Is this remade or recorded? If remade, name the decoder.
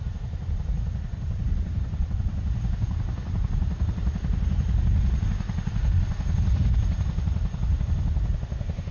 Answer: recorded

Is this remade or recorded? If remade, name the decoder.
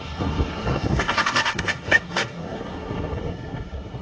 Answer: remade, codec, SNAC